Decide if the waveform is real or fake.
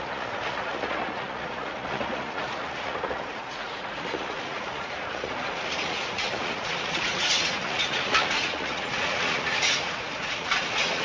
fake